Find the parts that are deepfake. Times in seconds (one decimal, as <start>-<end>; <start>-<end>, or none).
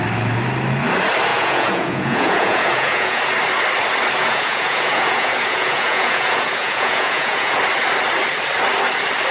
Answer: 1.3-3.2; 4.2-7.6